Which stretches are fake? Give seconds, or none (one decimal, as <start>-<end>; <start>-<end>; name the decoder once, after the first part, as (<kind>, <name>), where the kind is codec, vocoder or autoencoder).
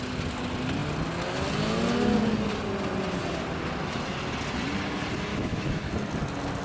5.3-5.9 (autoencoder, DAC-VAE)